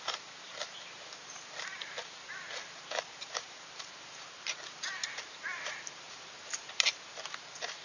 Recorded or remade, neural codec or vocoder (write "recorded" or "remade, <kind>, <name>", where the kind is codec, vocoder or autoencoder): remade, vocoder, BigVGAN v2